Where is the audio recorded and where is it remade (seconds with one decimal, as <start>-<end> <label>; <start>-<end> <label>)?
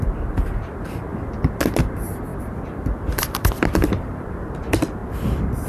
0.0-2.3 recorded; 2.3-4.3 remade; 4.3-5.7 recorded